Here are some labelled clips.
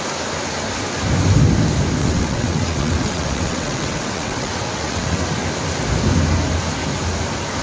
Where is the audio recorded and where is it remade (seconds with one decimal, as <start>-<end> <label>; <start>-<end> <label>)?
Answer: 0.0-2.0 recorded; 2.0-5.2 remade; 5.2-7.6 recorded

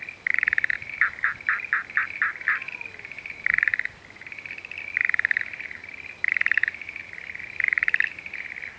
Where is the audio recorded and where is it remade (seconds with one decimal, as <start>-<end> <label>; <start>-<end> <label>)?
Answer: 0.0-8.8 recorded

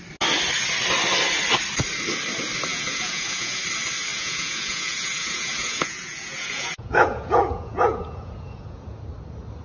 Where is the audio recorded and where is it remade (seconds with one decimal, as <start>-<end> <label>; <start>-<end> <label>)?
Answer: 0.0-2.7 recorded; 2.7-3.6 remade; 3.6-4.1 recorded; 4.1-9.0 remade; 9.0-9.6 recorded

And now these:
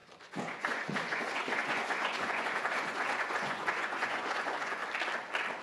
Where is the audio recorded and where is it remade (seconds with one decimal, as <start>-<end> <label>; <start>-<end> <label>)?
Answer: 0.0-4.8 remade; 4.8-5.6 recorded

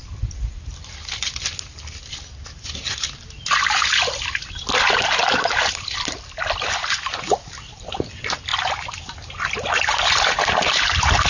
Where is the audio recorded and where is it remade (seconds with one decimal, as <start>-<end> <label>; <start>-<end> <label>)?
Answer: 0.0-11.3 recorded

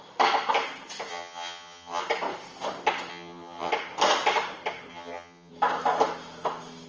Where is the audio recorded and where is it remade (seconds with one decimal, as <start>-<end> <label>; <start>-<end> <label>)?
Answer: 0.0-1.1 recorded; 1.1-2.0 remade; 2.0-3.1 recorded; 3.1-3.7 remade; 3.7-4.9 recorded; 4.9-5.5 remade; 5.5-6.9 recorded